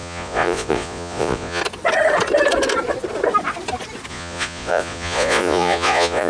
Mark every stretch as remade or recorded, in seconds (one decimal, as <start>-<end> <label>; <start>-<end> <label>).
0.0-1.6 remade; 1.6-4.1 recorded; 4.1-6.3 remade